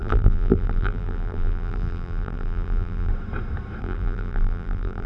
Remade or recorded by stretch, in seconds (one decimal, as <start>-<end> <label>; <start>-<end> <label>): 0.0-3.1 remade; 3.1-3.8 recorded; 3.8-5.1 remade

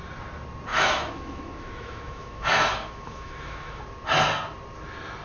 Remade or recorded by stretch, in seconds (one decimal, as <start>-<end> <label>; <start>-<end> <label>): 0.0-0.7 recorded; 0.7-3.8 remade; 3.8-5.2 recorded

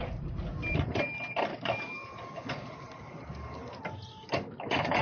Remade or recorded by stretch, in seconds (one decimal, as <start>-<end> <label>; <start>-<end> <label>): 0.0-1.5 recorded; 1.5-2.5 remade; 2.5-4.1 recorded; 4.1-5.0 remade

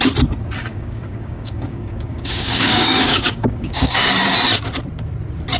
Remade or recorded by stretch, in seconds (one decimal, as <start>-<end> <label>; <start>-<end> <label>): 0.0-0.7 recorded; 0.7-4.1 remade; 4.1-5.6 recorded

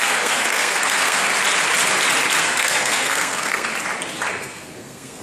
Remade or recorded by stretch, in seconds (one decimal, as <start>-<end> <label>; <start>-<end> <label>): 0.0-1.3 remade; 1.3-2.4 recorded; 2.4-3.7 remade; 3.7-4.3 recorded; 4.3-5.2 remade

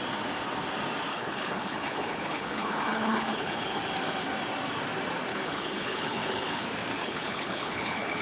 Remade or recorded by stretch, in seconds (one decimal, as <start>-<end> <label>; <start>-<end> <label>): 0.0-1.1 recorded; 1.1-3.8 remade; 3.8-5.3 recorded; 5.3-6.6 remade; 6.6-7.0 recorded; 7.0-8.2 remade